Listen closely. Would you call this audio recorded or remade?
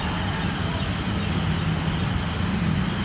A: recorded